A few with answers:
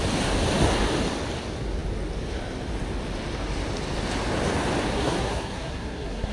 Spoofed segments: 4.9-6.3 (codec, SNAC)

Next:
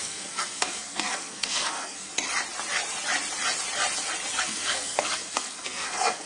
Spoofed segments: 0.0-2.1 (codec, SNAC); 4.4-6.3

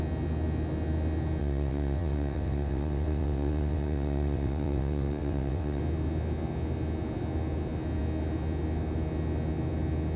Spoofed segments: 1.4-5.8 (vocoder, WaveNeXt)

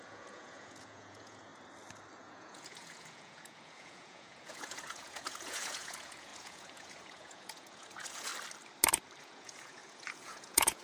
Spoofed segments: 0.0-1.5 (vocoder, Vocos); 2.2-8.3; 9.2-10.8

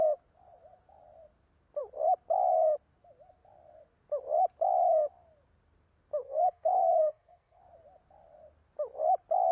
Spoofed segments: 6.2-7.6 (codec, SNAC)

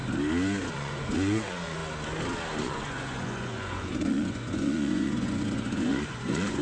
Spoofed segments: 0.7-1.8 (vocoder, Vocos); 2.6-6.6

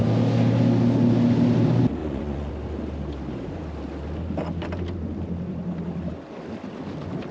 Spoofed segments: 2.0-2.5 (vocoder, Vocos)

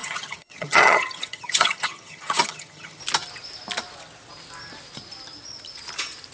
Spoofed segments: 0.0-3.0 (vocoder, HiFi-GAN)